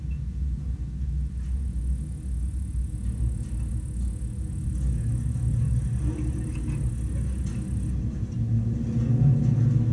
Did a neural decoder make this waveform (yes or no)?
no